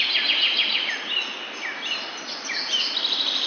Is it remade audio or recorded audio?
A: recorded